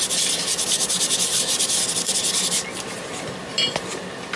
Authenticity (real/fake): real